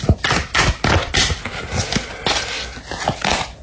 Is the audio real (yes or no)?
yes